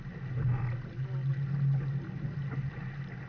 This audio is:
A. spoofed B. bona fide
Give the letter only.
B